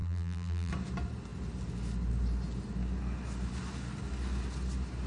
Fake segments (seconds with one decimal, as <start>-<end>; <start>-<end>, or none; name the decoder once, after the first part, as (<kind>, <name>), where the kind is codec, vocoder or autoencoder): 0.0-0.7 (vocoder, BigVGAN v2)

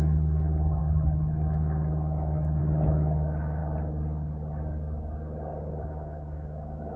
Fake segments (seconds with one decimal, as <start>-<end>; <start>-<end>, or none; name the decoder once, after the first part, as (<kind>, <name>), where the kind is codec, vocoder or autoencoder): 0.0-3.6 (autoencoder, DAC-VAE); 5.8-7.0

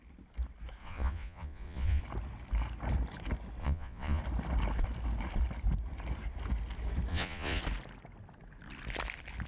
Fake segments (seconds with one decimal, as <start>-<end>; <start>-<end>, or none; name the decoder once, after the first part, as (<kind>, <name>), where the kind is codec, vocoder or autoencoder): 0.8-2.0 (vocoder, Vocos); 3.6-4.2; 7.1-7.6

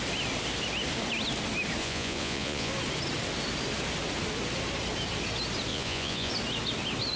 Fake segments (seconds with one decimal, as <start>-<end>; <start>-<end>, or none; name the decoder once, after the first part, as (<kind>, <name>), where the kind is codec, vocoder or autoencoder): 1.8-2.7 (vocoder, Vocos); 5.7-6.3

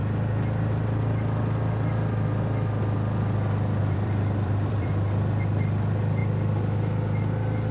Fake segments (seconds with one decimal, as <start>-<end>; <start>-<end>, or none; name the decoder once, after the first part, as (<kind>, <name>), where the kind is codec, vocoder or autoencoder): 3.8-6.2 (vocoder, BigVGAN v2)

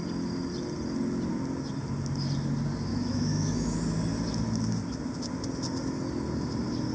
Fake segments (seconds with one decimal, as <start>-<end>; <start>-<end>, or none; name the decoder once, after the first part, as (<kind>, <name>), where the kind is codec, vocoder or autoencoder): 2.9-3.8 (autoencoder, DAC-VAE)

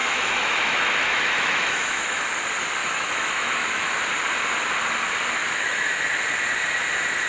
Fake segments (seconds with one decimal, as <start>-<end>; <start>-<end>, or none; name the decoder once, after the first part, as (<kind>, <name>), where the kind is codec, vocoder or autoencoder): 0.0-2.2 (autoencoder, DAC-VAE); 2.8-4.0; 5.4-6.1